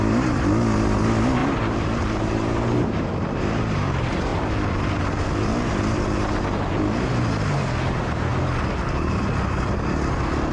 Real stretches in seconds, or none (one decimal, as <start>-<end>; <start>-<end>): 0.0-1.4; 3.1-10.5